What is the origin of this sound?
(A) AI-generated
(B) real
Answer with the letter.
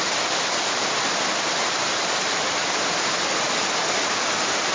A